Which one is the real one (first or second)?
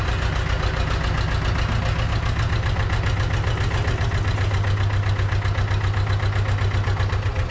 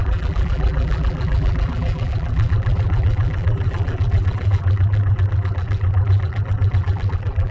first